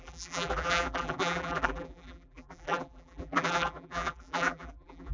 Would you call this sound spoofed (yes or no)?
yes